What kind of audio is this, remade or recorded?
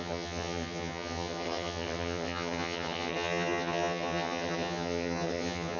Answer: remade